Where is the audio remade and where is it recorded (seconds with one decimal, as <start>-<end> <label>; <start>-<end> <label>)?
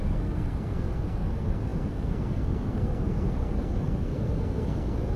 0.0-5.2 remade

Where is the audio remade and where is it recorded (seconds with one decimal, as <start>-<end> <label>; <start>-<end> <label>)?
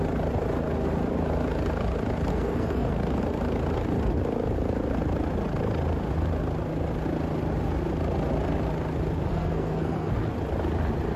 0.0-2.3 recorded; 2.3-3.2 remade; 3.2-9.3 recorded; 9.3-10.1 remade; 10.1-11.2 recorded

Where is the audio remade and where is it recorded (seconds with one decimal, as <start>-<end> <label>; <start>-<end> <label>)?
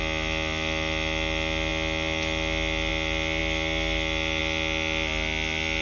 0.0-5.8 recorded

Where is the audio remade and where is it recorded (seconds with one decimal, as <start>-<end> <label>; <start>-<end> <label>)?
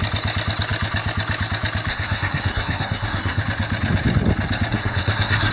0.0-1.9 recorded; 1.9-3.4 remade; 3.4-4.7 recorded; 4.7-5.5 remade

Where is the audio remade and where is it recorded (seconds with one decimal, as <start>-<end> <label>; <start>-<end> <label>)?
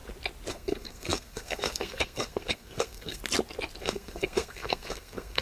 0.0-0.5 recorded; 0.5-3.2 remade; 3.2-3.8 recorded; 3.8-5.4 remade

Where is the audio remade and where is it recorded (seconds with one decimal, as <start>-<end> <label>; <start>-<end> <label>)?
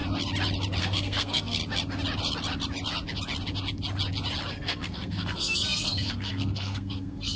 0.0-0.8 recorded; 0.8-1.6 remade; 1.6-4.5 recorded; 4.5-7.4 remade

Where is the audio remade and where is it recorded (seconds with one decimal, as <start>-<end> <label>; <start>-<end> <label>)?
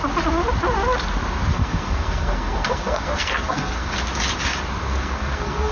0.0-1.5 recorded; 1.5-3.9 remade; 3.9-4.8 recorded; 4.8-5.7 remade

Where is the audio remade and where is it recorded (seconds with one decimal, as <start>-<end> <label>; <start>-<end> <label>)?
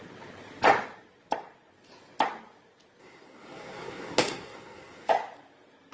0.0-3.0 recorded; 3.0-5.1 remade; 5.1-5.9 recorded